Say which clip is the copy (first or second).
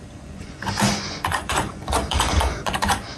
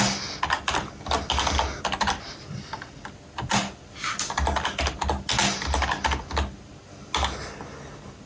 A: first